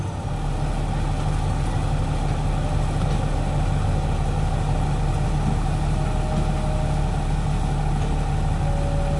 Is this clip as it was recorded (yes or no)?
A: yes